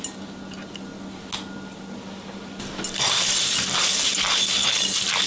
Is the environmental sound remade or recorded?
recorded